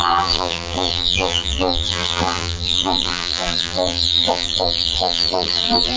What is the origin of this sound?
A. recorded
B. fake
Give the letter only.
B